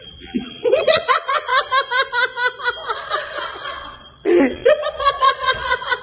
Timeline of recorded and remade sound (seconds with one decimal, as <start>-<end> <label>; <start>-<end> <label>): 0.0-1.5 remade; 1.5-2.9 recorded; 2.9-6.0 remade